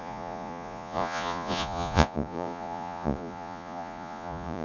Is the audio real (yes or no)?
no